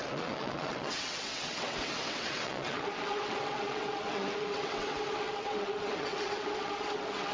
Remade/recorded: remade